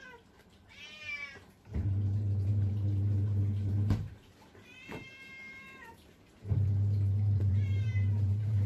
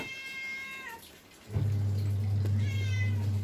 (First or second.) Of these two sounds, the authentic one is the second